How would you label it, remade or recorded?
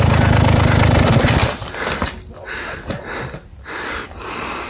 recorded